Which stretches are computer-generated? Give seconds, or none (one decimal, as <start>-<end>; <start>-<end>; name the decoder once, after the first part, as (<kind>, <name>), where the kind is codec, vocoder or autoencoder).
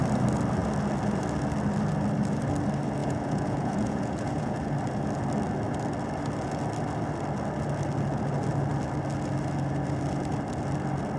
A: 3.0-4.6 (vocoder, Vocos)